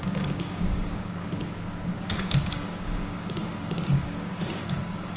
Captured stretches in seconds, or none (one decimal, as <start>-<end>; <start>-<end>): none